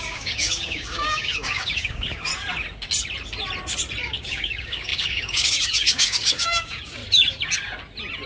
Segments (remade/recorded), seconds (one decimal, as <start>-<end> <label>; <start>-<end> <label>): 0.0-2.3 remade; 2.3-4.0 recorded; 4.0-7.0 remade; 7.0-8.3 recorded